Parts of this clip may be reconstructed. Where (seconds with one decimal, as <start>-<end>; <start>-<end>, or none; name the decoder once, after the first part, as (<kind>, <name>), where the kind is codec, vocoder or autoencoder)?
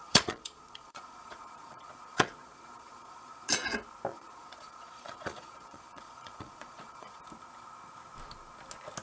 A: 0.0-3.5 (vocoder, Vocos); 4.1-7.2